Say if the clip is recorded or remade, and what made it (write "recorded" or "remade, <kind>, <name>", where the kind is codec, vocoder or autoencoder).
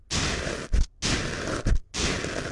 recorded